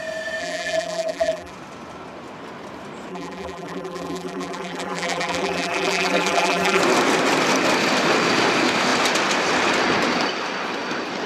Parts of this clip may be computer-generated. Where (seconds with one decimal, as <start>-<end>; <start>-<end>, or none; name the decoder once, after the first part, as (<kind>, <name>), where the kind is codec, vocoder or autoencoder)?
0.4-1.5 (vocoder, BigVGAN v2); 3.1-6.8